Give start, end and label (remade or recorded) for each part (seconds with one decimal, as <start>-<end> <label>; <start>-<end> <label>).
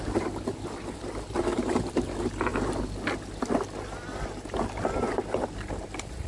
0.0-1.5 recorded; 1.5-2.1 remade; 2.1-6.3 recorded